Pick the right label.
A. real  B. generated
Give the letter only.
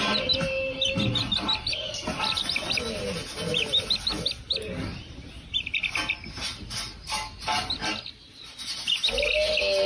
A